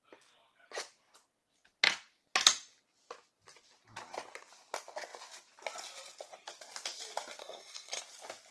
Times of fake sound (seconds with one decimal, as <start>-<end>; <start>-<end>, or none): 7.4-8.0